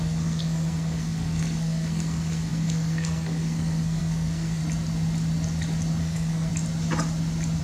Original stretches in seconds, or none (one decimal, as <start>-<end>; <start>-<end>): 4.6-6.0; 6.5-7.6